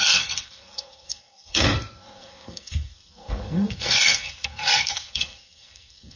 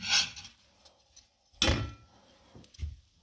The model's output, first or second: first